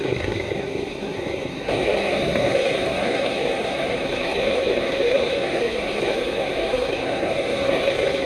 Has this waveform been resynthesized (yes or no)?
yes